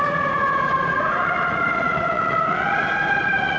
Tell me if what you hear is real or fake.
fake